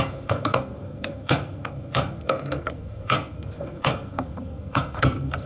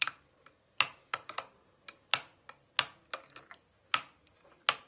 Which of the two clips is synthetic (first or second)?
first